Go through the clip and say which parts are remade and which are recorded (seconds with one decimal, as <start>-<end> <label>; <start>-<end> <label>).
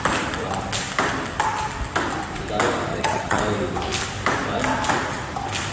0.0-2.9 recorded; 2.9-3.4 remade; 3.4-5.7 recorded